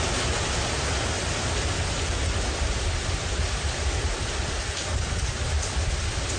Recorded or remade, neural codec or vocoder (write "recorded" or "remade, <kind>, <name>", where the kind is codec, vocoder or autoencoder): recorded